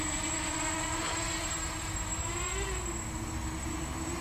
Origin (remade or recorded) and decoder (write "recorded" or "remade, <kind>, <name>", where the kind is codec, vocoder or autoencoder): recorded